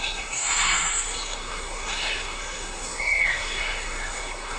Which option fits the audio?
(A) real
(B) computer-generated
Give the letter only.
B